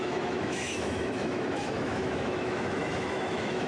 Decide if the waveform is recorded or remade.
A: remade